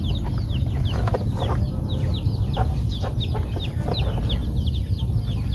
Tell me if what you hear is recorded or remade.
recorded